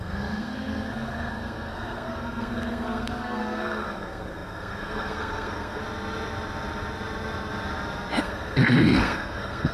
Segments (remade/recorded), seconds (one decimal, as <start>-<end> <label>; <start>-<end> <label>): 0.0-5.8 remade; 5.8-8.2 recorded; 8.2-9.7 remade